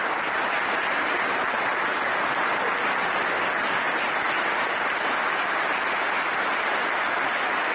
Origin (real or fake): real